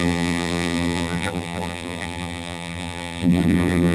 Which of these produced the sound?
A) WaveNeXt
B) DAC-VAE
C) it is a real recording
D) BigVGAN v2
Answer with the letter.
D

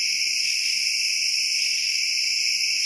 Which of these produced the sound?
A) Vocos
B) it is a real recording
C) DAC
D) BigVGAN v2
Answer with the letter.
B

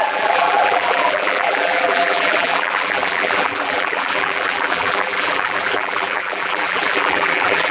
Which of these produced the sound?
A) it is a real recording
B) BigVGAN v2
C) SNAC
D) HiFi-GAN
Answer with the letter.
B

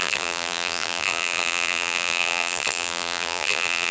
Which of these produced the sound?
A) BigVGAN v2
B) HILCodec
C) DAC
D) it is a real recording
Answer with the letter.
A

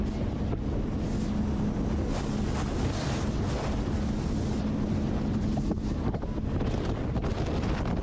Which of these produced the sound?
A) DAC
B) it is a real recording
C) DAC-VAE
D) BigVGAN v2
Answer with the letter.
B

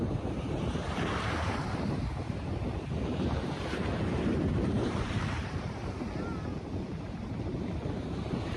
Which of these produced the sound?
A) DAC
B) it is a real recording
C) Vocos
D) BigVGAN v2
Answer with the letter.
D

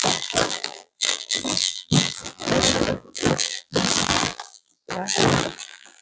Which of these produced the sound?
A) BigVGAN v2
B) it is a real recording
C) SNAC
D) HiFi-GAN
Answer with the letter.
A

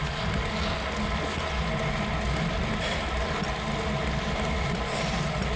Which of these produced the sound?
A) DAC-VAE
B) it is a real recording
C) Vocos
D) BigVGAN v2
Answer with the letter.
B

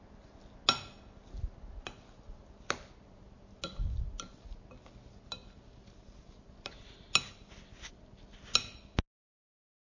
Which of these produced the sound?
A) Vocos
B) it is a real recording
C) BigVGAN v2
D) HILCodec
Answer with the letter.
B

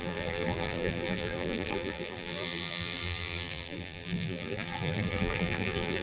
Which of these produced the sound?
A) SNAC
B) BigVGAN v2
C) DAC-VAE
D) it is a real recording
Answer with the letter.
B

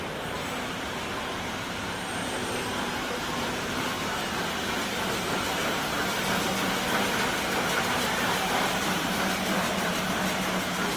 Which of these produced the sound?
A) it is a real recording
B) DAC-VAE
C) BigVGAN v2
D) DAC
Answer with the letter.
C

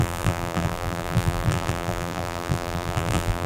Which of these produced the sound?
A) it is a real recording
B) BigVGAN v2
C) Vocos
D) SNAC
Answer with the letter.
B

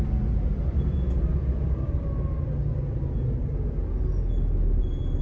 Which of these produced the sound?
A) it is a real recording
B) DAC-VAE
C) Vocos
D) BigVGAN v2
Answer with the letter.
A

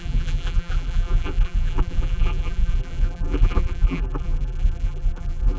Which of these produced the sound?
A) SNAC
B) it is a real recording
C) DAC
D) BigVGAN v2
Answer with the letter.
D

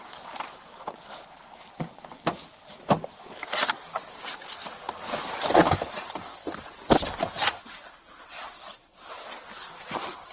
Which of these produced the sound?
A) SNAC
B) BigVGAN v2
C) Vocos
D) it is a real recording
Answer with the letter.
D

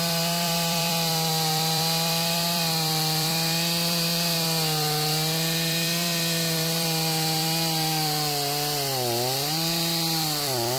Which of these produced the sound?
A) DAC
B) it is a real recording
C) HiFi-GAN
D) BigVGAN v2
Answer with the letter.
D